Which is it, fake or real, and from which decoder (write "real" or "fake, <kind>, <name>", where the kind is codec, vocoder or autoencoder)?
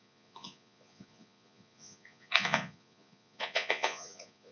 fake, vocoder, Vocos